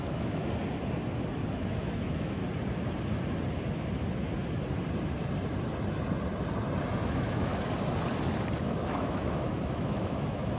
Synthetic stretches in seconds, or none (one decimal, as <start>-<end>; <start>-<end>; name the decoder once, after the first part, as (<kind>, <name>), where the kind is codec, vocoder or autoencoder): 0.0-0.4 (autoencoder, DAC-VAE); 1.5-2.4; 7.0-7.5; 8.7-10.6